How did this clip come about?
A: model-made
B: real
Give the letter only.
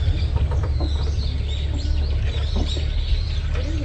B